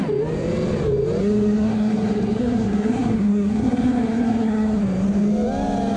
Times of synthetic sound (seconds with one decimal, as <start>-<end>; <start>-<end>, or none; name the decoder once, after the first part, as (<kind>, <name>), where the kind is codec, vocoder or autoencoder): 1.2-4.8 (codec, SNAC)